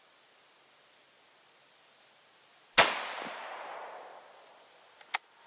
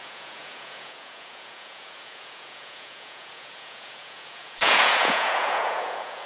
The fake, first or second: second